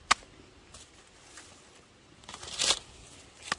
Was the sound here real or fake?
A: real